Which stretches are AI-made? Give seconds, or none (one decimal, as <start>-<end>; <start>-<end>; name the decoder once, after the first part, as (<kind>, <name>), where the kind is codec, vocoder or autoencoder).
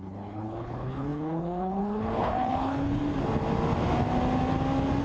0.0-3.0 (codec, HILCodec)